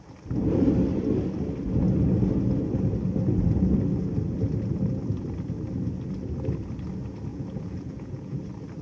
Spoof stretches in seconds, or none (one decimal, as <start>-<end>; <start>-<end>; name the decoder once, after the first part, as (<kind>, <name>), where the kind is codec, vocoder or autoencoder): 7.3-8.4 (vocoder, Vocos)